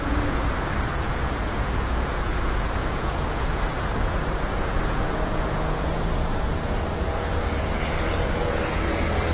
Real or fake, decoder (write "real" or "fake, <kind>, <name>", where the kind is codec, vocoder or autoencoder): fake, vocoder, Vocos